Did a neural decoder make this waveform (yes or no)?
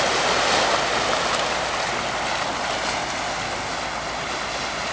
no